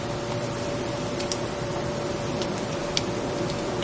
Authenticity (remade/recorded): remade